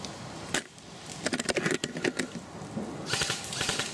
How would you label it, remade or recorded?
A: recorded